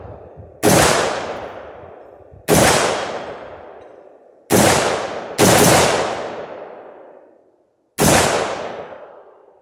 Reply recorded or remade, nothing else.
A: recorded